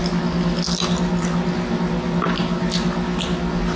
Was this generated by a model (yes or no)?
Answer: no